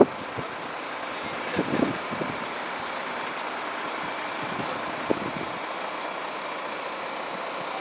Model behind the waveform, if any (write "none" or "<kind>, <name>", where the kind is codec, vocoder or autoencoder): none